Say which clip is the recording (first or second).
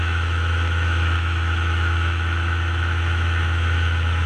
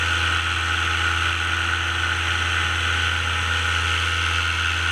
second